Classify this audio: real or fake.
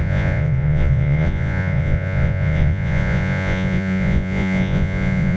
fake